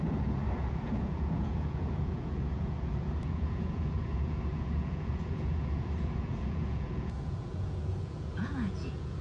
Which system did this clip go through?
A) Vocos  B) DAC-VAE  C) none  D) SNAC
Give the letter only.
A